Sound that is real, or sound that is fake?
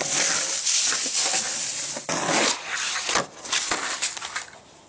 real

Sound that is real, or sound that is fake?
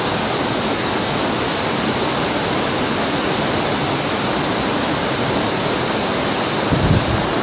real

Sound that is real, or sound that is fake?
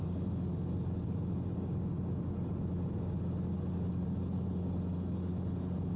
real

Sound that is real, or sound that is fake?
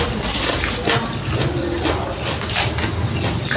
real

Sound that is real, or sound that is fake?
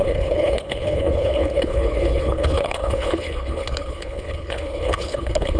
fake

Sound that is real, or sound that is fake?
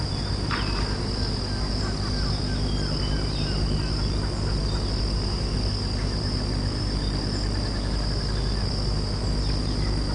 real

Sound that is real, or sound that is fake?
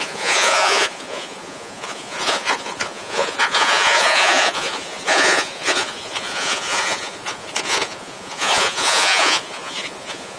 fake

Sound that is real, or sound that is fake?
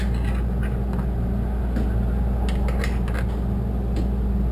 real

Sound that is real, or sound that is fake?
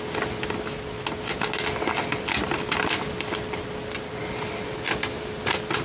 real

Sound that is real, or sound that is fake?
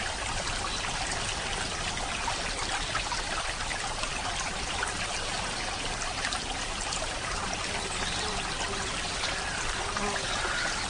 real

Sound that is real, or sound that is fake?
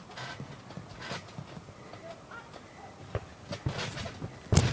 real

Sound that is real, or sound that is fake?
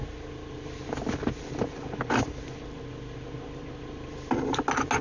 real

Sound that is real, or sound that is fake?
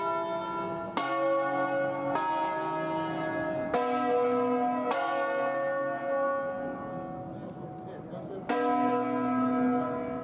real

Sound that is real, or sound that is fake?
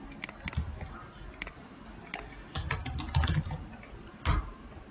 real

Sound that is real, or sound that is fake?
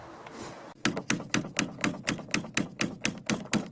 real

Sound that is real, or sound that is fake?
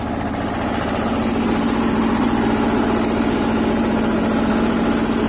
real